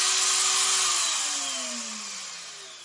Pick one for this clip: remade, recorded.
recorded